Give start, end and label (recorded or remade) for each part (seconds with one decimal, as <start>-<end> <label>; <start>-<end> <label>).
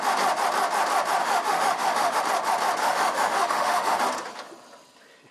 0.0-1.2 recorded; 1.2-2.2 remade; 2.2-2.8 recorded; 2.8-4.0 remade; 4.0-5.3 recorded